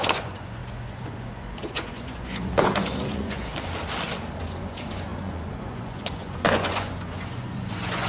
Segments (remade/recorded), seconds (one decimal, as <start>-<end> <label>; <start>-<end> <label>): 0.0-3.5 remade; 3.5-4.4 recorded; 4.4-8.1 remade